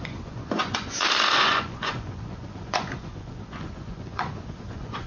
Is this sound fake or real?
fake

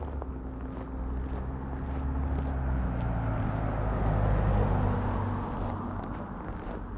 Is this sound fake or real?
real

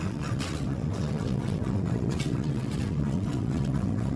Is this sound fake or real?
fake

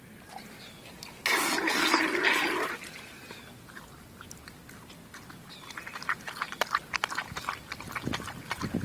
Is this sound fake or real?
real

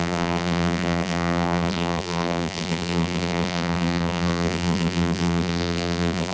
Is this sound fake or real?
fake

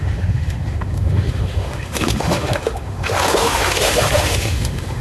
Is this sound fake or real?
fake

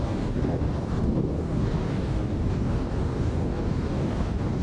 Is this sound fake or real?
fake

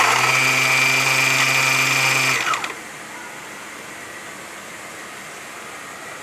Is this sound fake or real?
real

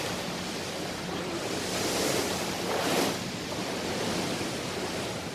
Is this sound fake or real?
real